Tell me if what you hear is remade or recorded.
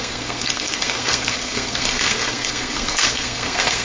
remade